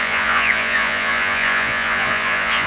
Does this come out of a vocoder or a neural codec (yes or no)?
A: yes